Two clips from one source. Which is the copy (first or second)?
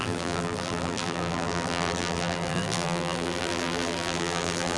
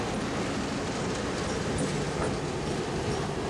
first